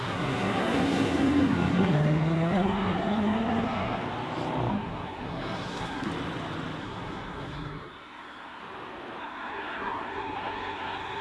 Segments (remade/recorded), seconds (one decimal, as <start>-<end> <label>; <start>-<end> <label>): 0.0-4.0 remade; 4.0-4.7 recorded; 4.7-6.1 remade; 6.1-6.8 recorded; 6.8-8.6 remade; 8.6-9.2 recorded; 9.2-11.2 remade